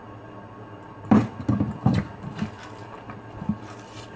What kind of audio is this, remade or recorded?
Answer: remade